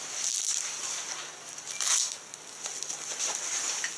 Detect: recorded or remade recorded